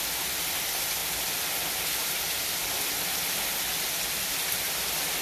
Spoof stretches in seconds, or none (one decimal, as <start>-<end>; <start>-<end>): none